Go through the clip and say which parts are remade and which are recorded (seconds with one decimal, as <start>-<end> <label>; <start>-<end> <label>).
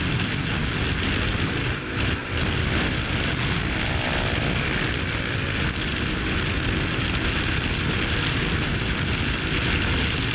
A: 0.0-10.3 recorded